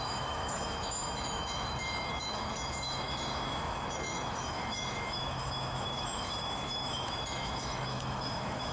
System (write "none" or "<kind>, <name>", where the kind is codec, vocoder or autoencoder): autoencoder, DAC-VAE